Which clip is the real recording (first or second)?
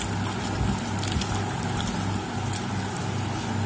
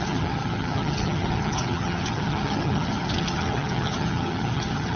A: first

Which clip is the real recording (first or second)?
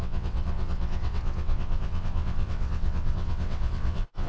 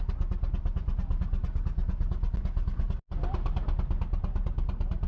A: second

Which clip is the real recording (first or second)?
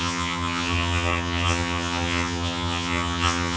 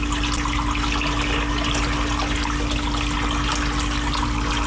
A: second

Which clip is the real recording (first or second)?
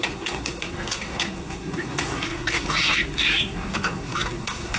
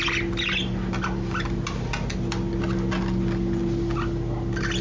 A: second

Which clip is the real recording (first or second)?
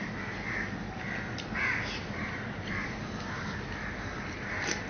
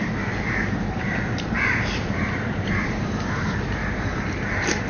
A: first